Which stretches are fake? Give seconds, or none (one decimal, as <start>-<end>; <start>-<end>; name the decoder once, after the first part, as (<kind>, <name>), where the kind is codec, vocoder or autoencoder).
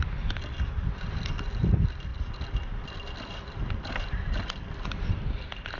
none